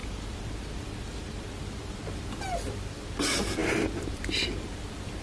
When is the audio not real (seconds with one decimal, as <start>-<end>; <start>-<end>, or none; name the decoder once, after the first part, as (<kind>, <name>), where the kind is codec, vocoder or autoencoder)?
0.0-5.2 (vocoder, BigVGAN v2)